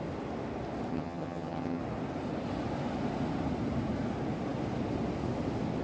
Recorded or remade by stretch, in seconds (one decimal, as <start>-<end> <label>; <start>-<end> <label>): 0.0-0.9 recorded; 0.9-1.8 remade; 1.8-5.8 recorded